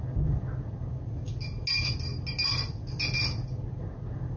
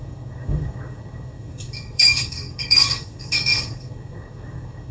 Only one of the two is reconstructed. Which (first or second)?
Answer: second